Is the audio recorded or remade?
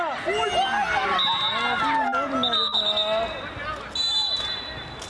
recorded